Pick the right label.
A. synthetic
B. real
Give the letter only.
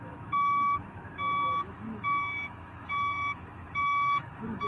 A